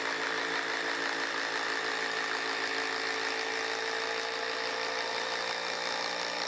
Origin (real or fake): real